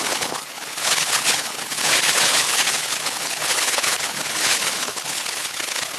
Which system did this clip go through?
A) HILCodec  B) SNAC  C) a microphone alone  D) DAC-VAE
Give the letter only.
A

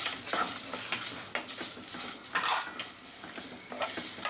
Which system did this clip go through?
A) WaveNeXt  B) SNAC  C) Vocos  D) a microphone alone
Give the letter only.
D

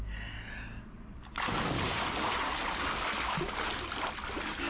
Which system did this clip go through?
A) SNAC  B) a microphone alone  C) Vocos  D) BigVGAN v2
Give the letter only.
B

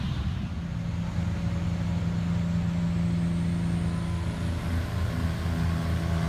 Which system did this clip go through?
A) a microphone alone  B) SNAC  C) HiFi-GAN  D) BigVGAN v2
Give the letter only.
A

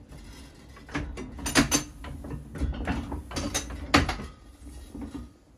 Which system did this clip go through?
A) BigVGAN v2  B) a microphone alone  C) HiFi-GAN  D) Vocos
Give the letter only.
B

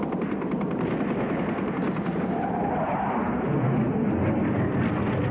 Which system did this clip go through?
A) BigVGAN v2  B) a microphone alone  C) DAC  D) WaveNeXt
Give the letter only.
B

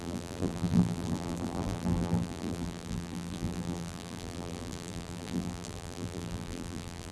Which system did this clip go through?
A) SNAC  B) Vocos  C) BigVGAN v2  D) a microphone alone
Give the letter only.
C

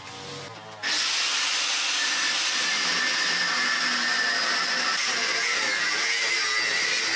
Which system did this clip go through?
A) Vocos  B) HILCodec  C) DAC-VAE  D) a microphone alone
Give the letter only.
D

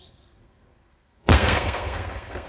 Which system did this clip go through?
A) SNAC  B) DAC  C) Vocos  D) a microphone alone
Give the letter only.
A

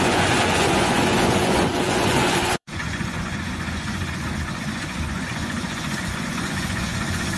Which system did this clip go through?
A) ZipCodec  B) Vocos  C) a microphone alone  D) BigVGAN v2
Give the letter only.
B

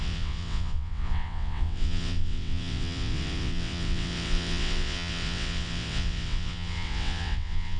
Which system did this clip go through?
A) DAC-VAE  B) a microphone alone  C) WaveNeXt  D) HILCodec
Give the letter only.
C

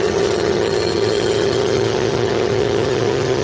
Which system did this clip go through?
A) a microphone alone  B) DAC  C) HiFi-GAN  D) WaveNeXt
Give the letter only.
C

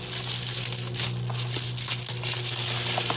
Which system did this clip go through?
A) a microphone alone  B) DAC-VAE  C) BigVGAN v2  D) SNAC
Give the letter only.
A